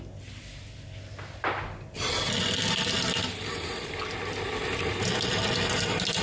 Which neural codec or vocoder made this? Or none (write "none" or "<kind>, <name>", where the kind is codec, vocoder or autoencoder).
none